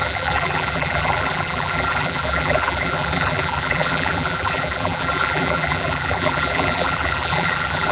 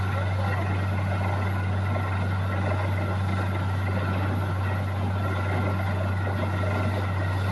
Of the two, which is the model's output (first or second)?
first